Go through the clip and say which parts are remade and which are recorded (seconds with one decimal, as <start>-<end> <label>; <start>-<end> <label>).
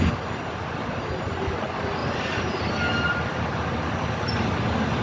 0.0-5.0 recorded